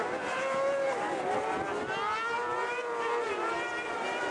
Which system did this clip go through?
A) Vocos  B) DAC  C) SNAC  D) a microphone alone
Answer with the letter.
D